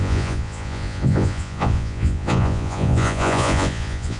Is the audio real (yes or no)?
no